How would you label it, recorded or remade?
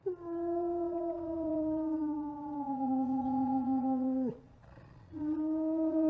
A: remade